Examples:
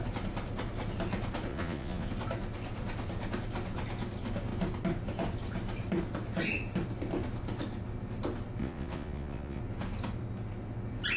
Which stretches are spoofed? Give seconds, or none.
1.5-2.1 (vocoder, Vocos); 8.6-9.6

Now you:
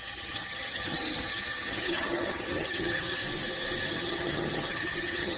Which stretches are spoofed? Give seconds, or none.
0.0-3.2 (vocoder, HiFi-GAN); 3.9-5.4